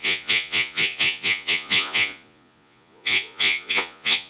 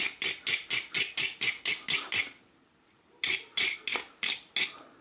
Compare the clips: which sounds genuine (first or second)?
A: second